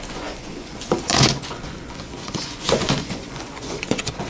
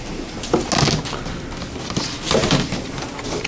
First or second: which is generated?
first